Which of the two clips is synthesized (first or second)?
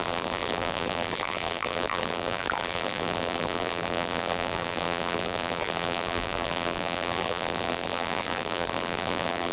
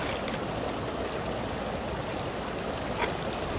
first